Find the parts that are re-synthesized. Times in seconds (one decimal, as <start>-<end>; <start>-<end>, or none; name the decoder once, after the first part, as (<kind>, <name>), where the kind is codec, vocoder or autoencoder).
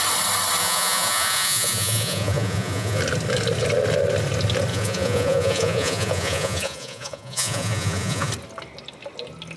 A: 0.6-3.0 (vocoder, Vocos); 4.7-8.3